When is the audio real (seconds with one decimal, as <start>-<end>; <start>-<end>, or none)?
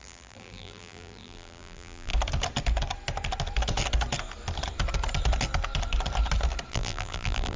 2.1-6.7